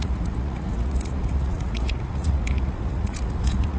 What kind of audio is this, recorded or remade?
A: remade